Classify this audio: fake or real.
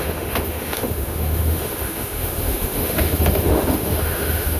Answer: fake